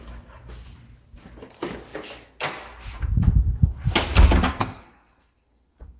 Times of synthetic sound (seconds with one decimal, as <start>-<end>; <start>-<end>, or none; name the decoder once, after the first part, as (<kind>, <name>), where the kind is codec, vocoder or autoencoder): 4.5-6.0 (codec, SNAC)